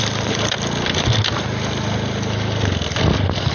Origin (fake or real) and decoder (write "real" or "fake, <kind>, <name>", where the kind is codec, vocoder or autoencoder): real